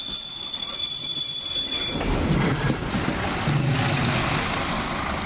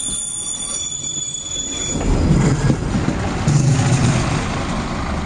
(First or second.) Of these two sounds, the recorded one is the second